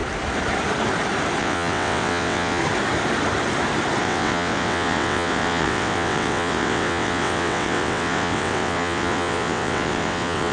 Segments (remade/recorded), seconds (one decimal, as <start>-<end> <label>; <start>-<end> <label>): 0.0-1.4 recorded; 1.4-2.6 remade; 2.6-4.0 recorded; 4.0-10.5 remade